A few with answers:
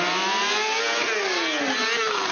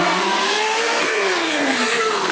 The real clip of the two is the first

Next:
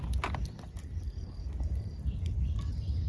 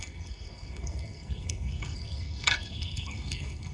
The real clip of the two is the first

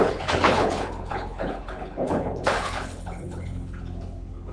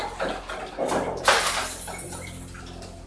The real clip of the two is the second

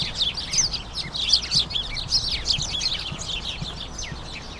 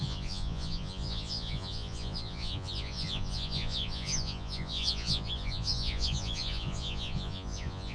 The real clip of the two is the first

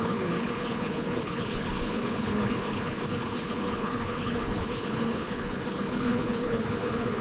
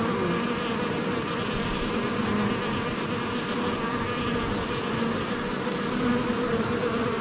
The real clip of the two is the second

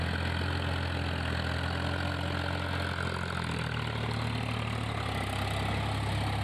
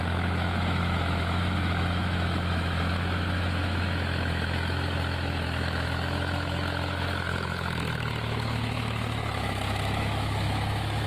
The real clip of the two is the first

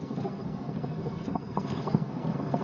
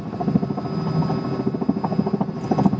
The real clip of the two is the second